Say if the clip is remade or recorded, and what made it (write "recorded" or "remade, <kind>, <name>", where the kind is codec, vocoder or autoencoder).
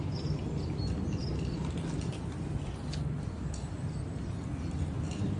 recorded